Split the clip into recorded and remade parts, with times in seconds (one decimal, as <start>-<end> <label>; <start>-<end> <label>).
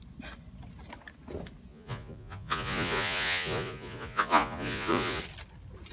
0.0-1.7 recorded; 1.7-5.2 remade; 5.2-5.9 recorded